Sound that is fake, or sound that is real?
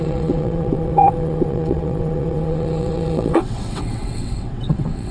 fake